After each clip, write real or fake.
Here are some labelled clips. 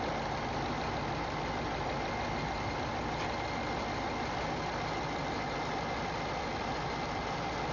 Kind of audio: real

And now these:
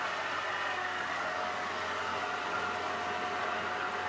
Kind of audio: real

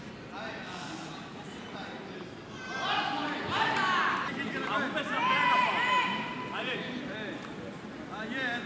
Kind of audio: real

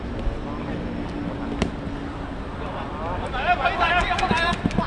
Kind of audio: real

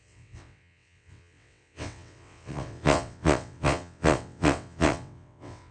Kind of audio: fake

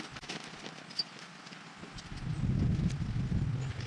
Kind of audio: real